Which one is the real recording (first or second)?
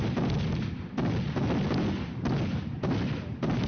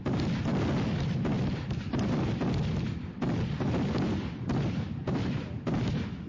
first